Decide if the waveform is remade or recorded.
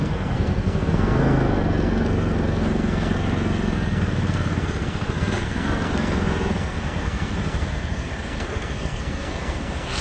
remade